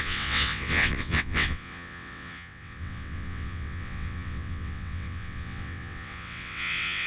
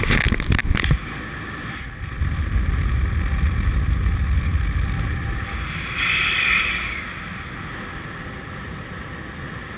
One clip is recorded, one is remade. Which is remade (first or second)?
first